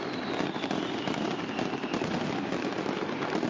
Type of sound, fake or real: real